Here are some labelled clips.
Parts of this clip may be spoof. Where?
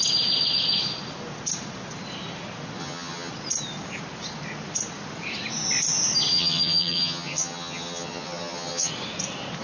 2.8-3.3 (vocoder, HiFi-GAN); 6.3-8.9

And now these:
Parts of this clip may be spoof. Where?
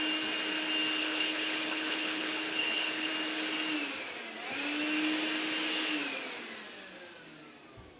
1.0-3.1 (codec, HILCodec)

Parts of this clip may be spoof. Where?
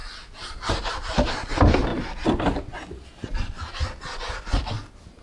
none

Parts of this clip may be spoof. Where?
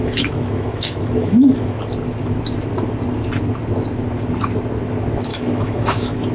0.0-1.8 (autoencoder, DAC-VAE); 5.3-6.3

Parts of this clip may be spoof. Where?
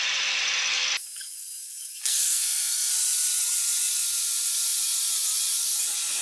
1.0-2.9 (codec, SNAC)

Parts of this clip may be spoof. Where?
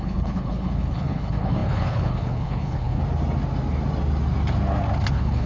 0.0-3.0 (codec, HILCodec); 5.1-5.5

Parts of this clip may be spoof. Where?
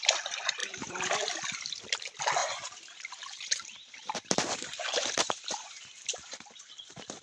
0.6-1.3 (vocoder, BigVGAN v2); 2.4-6.7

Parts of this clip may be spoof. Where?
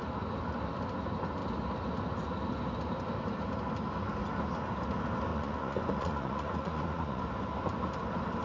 5.3-7.2 (vocoder, Vocos)